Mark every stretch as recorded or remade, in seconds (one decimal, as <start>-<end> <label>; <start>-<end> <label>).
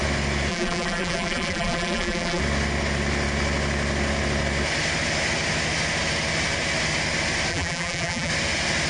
0.0-0.5 recorded; 0.5-2.4 remade; 2.4-7.5 recorded; 7.5-8.3 remade; 8.3-8.9 recorded